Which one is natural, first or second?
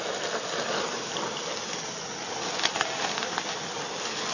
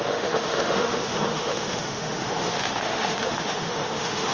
first